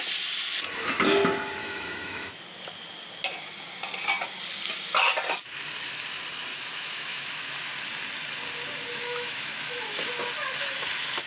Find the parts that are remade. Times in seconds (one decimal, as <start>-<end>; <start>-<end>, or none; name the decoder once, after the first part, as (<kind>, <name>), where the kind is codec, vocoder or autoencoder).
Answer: 1.6-2.4 (autoencoder, DAC-VAE); 6.5-7.7; 8.9-10.1